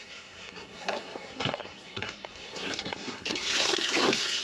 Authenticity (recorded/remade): remade